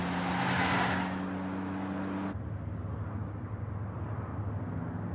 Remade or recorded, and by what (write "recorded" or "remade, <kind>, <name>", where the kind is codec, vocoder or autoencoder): recorded